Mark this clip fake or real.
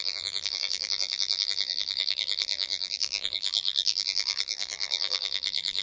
fake